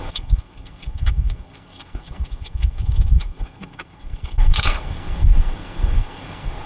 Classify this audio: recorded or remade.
remade